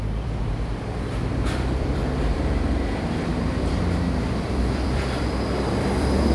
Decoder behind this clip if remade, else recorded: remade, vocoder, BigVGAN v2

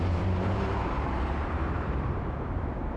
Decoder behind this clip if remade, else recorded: remade, vocoder, BigVGAN v2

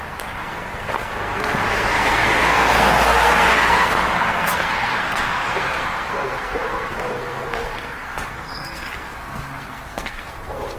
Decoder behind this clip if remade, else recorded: remade, codec, SNAC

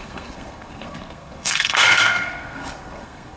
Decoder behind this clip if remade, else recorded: remade, codec, SNAC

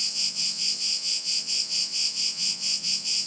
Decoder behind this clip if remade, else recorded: remade, vocoder, WaveNeXt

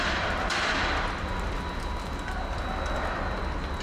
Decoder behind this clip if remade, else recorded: recorded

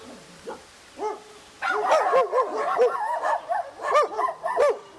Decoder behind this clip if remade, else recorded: recorded